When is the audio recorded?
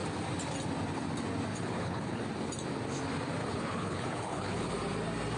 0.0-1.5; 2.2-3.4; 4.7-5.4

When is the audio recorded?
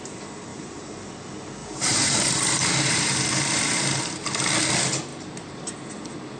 0.0-0.5; 1.1-1.6; 3.6-5.1; 5.7-6.4